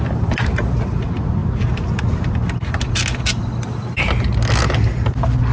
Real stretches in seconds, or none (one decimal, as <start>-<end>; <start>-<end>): 0.0-5.5